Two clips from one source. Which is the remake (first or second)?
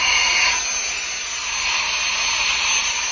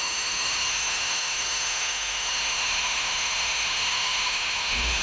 second